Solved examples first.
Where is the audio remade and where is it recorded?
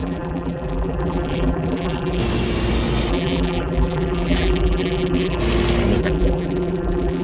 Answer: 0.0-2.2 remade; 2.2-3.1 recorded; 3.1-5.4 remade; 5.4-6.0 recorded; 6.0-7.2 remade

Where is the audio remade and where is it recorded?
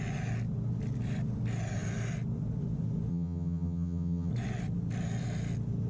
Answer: 0.0-3.1 recorded; 3.1-4.3 remade; 4.3-5.9 recorded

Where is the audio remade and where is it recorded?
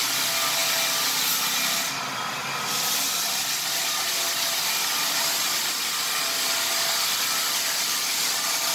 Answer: 0.0-8.7 recorded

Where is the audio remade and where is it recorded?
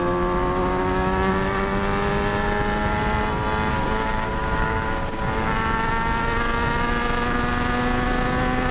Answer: 0.0-0.6 recorded; 0.6-1.3 remade; 1.3-3.7 recorded; 3.7-5.5 remade; 5.5-8.7 recorded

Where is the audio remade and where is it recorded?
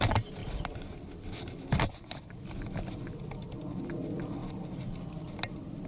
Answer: 0.0-5.9 recorded